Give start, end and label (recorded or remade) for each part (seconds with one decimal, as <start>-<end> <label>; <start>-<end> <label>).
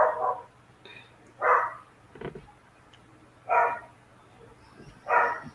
0.0-0.9 recorded; 0.9-2.1 remade; 2.1-5.5 recorded